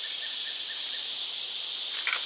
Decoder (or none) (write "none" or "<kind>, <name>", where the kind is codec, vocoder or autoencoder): none